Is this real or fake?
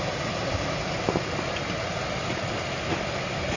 real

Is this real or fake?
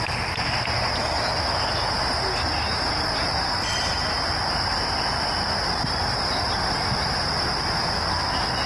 real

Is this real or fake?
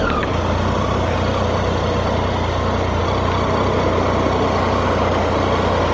real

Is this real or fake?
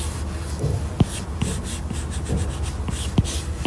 real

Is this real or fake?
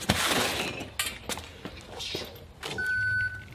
real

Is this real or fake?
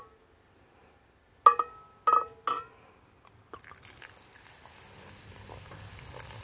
real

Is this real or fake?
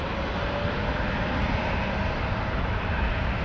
real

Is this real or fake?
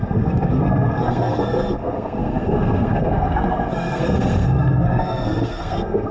fake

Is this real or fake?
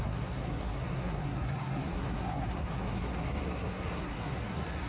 fake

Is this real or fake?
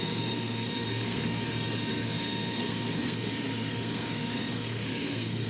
fake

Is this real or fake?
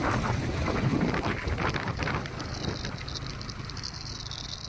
real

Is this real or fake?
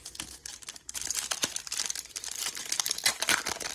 real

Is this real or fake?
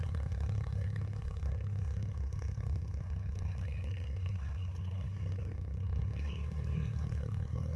fake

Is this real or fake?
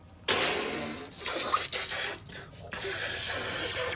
real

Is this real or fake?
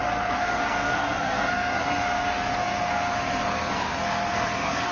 fake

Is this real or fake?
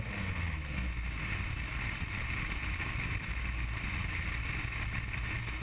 real